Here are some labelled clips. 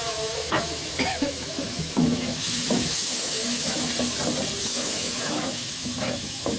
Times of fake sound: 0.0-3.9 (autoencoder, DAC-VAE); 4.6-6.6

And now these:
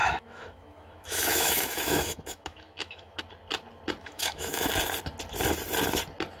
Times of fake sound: 0.0-3.2 (autoencoder, DAC-VAE); 4.0-4.7